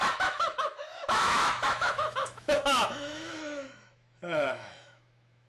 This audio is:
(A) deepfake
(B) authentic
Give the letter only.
A